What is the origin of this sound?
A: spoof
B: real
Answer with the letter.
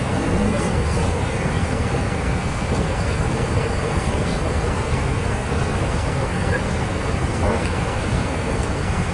A